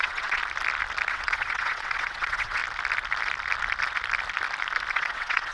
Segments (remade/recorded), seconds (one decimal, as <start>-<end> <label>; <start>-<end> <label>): 0.0-0.4 remade; 0.4-1.1 recorded; 1.1-2.6 remade; 2.6-4.9 recorded; 4.9-5.5 remade